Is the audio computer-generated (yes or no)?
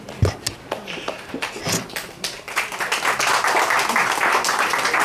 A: no